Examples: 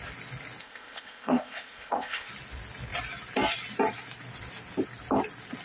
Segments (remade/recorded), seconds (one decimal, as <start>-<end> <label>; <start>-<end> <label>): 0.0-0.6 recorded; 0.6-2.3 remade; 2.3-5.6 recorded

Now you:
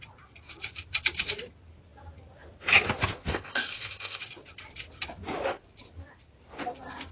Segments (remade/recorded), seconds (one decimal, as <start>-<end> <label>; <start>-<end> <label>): 0.0-3.3 recorded; 3.3-4.2 remade; 4.2-7.1 recorded

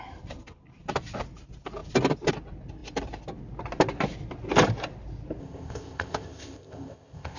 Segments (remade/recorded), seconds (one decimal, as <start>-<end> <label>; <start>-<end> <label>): 0.0-5.4 recorded; 5.4-7.4 remade

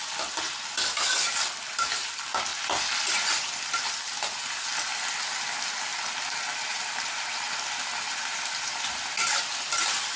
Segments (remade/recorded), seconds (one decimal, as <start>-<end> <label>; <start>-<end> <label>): 0.0-10.2 recorded

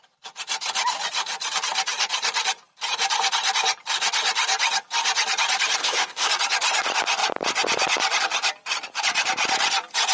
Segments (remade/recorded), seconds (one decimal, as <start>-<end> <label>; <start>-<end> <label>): 0.0-5.8 recorded; 5.8-6.3 remade; 6.3-10.1 recorded

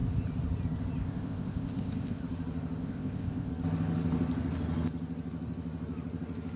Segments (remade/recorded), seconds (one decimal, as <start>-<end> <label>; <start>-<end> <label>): 0.0-1.0 recorded; 1.0-2.2 remade; 2.2-2.8 recorded; 2.8-3.5 remade; 3.5-6.6 recorded

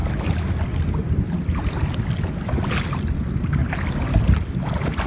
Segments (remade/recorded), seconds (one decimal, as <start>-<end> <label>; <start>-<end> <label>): 0.0-5.1 recorded

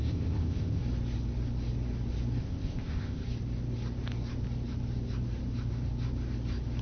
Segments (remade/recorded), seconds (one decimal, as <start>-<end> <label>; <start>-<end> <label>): 0.0-0.8 remade; 0.8-2.4 recorded; 2.4-3.2 remade; 3.2-6.8 recorded